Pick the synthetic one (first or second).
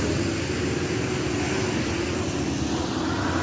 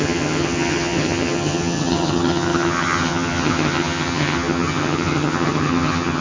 second